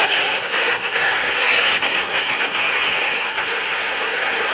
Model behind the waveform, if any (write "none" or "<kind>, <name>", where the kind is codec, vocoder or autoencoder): codec, SNAC